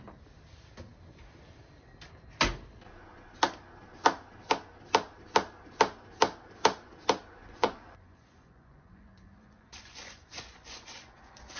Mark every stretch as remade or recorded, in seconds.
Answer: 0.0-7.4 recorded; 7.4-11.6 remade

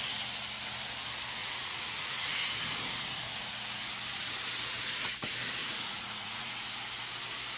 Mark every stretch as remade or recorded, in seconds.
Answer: 0.0-1.4 recorded; 1.4-2.3 remade; 2.3-5.6 recorded; 5.6-6.7 remade; 6.7-7.6 recorded

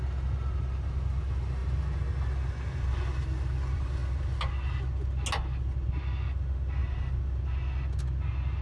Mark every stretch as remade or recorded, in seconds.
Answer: 0.0-8.6 recorded

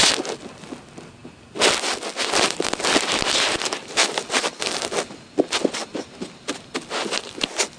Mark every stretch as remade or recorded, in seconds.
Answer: 0.0-7.8 recorded

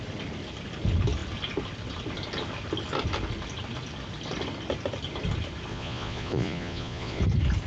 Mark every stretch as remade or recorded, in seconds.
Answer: 0.0-5.7 recorded; 5.7-7.2 remade; 7.2-7.7 recorded